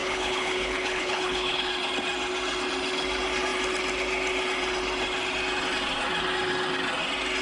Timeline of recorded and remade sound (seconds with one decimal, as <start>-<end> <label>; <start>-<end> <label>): 0.0-1.7 remade; 1.7-7.4 recorded

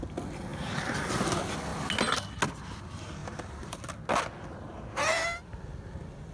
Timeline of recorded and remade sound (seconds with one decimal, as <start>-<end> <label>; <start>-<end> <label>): 0.0-3.2 recorded; 3.2-3.8 remade; 3.8-6.3 recorded

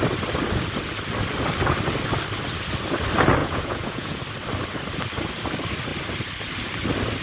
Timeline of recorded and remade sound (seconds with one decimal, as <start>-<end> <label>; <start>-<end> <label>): 0.0-3.4 recorded; 3.4-4.2 remade; 4.2-7.2 recorded

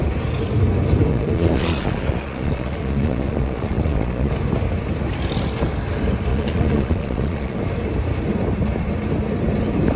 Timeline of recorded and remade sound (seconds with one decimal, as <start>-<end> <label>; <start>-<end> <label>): 0.0-1.1 recorded; 1.1-4.3 remade; 4.3-6.3 recorded; 6.3-7.6 remade; 7.6-10.0 recorded